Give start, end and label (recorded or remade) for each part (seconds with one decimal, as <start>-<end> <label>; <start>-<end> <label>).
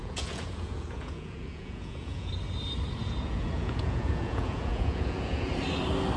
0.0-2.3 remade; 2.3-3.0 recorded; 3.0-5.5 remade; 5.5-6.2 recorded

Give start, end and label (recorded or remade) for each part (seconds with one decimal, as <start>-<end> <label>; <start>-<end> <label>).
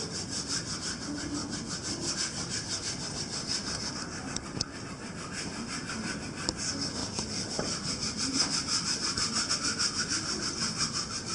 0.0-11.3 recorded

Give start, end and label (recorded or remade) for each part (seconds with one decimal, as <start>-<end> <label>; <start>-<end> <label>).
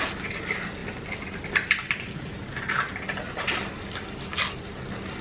0.0-5.2 recorded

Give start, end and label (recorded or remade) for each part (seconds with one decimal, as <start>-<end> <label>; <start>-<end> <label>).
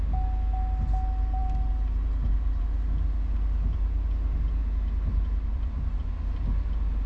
0.0-7.1 recorded